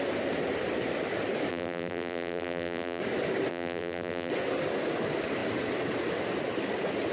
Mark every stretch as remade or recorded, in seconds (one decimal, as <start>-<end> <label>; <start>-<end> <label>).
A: 0.0-1.5 recorded; 1.5-3.0 remade; 3.0-3.5 recorded; 3.5-4.3 remade; 4.3-7.1 recorded